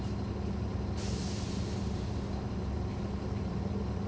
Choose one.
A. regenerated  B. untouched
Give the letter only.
B